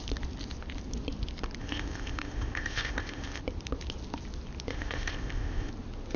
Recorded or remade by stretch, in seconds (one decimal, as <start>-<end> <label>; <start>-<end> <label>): 0.0-1.6 recorded; 1.6-3.4 remade; 3.4-4.7 recorded; 4.7-5.7 remade; 5.7-6.2 recorded